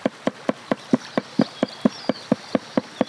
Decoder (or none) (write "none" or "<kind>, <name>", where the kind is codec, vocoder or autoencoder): none